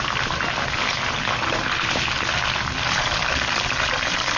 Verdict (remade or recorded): recorded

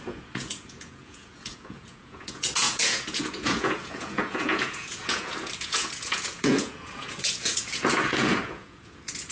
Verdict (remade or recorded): remade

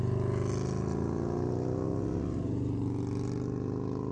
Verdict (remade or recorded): recorded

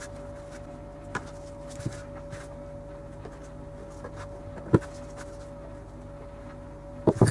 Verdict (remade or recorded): recorded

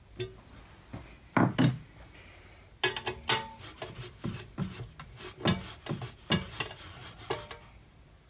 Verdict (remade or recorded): recorded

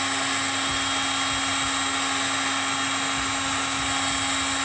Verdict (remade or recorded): recorded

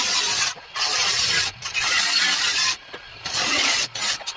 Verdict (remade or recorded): remade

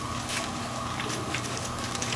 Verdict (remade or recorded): remade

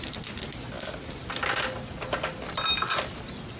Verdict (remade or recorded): recorded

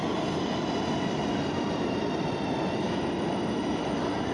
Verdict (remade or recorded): recorded